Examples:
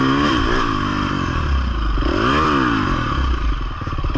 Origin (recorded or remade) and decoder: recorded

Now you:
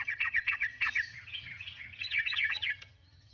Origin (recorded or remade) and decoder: remade, vocoder, HiFi-GAN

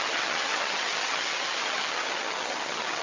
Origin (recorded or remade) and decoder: remade, vocoder, HiFi-GAN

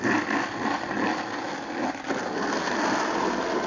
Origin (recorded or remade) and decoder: recorded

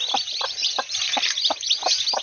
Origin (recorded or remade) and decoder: recorded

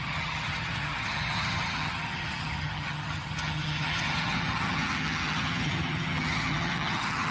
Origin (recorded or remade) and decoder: remade, vocoder, HiFi-GAN